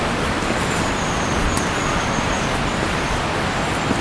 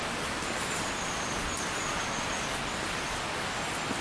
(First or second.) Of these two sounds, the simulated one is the first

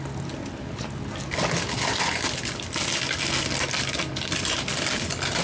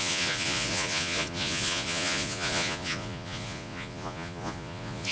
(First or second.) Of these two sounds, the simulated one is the second